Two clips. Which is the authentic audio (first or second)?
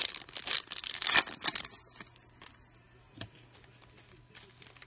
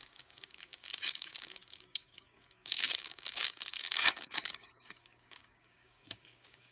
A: first